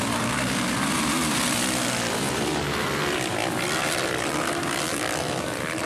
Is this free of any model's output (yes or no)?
yes